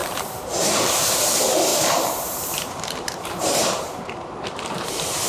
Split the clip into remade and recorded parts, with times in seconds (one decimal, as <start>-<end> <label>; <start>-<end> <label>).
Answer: 0.0-1.1 remade; 1.1-1.7 recorded; 1.7-5.3 remade